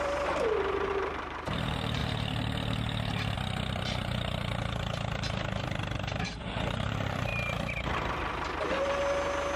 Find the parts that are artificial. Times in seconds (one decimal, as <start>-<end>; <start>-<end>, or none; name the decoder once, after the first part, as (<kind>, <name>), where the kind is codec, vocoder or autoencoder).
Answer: 0.0-2.0 (vocoder, BigVGAN v2); 6.2-7.3